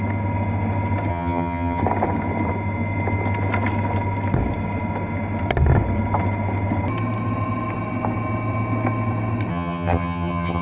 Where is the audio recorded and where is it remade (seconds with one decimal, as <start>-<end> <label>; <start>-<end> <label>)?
0.0-1.1 recorded; 1.1-1.8 remade; 1.8-9.5 recorded; 9.5-10.6 remade